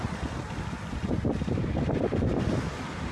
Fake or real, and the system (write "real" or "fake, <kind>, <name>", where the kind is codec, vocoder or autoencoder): real